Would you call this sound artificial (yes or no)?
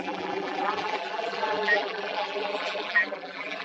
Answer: yes